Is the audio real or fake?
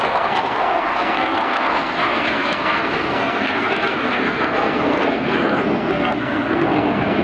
fake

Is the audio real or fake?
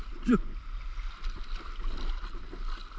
real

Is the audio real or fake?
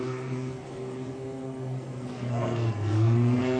fake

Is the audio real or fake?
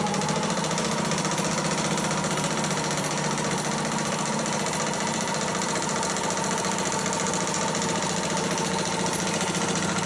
real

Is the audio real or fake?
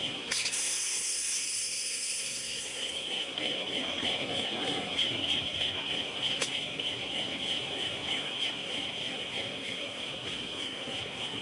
fake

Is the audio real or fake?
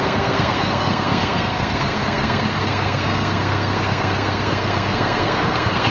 fake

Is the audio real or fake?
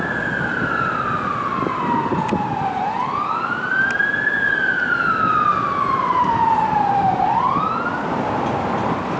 real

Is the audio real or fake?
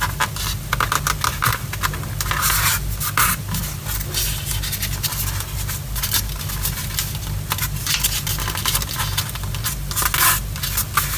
real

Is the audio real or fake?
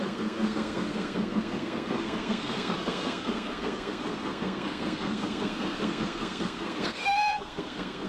fake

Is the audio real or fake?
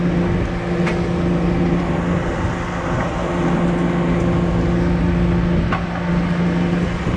real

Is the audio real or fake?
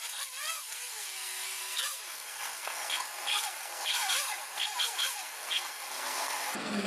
fake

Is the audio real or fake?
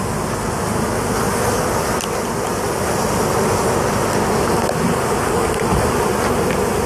real